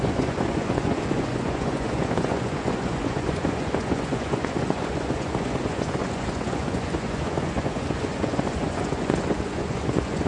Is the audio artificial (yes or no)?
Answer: yes